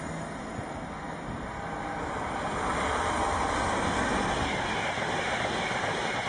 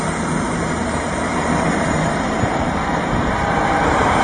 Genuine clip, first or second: first